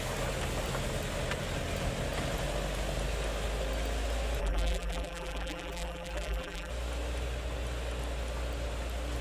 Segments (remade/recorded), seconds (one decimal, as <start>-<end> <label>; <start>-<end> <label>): 0.0-4.4 recorded; 4.4-6.7 remade; 6.7-9.2 recorded